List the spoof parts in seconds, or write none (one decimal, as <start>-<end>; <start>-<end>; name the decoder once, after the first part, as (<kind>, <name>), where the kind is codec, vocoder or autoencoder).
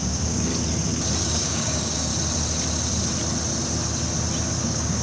0.0-0.5 (codec, DAC); 1.2-2.1; 4.6-5.0